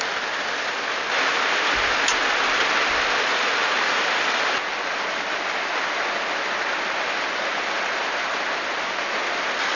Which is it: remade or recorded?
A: recorded